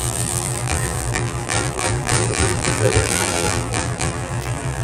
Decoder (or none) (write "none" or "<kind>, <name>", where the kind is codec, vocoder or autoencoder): vocoder, BigVGAN v2